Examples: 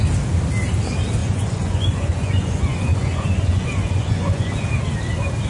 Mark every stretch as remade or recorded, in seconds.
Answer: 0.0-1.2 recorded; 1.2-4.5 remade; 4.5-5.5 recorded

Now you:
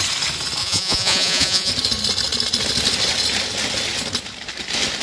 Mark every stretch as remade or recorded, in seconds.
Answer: 0.0-0.6 recorded; 0.6-1.7 remade; 1.7-5.0 recorded